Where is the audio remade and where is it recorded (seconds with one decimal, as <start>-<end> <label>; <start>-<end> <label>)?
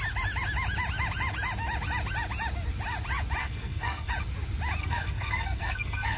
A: 0.0-3.4 recorded; 3.4-4.1 remade; 4.1-4.8 recorded; 4.8-6.2 remade